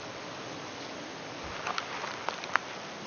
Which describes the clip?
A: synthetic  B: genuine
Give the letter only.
B